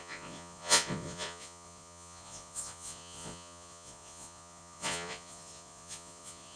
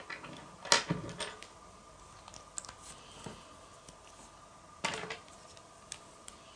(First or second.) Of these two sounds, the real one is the second